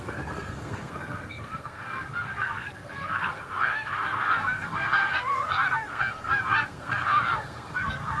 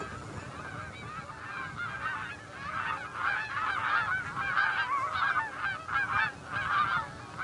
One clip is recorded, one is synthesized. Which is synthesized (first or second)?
first